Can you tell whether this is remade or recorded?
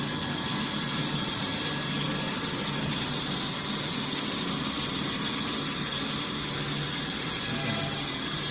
recorded